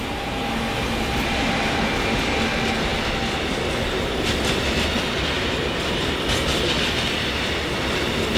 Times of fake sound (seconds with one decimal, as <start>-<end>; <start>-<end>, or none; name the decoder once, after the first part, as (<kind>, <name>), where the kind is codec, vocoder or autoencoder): none